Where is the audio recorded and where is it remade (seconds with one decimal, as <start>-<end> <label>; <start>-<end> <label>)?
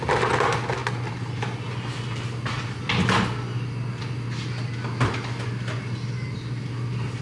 0.0-7.2 recorded